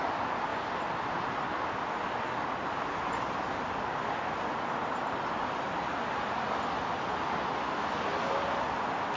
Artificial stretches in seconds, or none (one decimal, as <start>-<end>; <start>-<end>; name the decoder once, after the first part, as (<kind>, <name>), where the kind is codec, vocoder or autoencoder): none